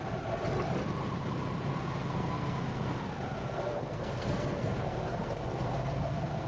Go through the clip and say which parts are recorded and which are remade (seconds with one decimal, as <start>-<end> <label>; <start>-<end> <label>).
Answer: 0.0-1.7 recorded; 1.7-3.0 remade; 3.0-3.4 recorded; 3.4-6.5 remade